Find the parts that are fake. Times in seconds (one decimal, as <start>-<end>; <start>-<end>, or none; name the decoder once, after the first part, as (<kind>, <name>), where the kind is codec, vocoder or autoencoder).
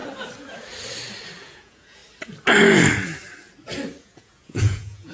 1.4-2.0 (vocoder, Vocos); 4.0-5.1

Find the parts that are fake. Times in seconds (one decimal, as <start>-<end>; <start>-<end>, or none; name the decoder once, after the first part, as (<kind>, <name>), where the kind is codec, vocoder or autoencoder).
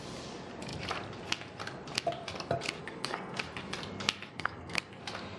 2.8-3.4 (codec, SNAC); 4.3-5.0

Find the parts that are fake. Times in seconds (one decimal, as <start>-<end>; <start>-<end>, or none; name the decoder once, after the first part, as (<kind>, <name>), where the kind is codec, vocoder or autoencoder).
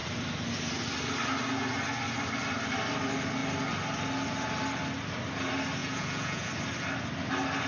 5.8-6.5 (vocoder, Vocos)